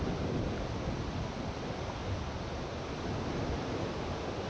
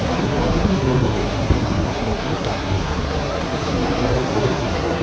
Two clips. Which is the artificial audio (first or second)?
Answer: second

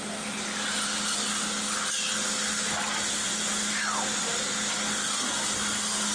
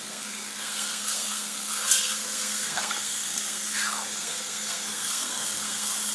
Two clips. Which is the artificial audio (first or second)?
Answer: second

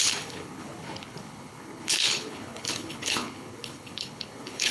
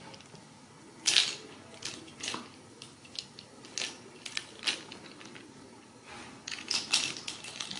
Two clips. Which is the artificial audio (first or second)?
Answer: first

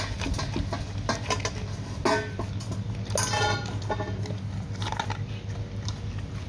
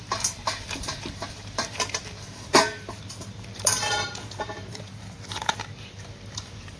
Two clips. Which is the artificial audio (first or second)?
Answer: second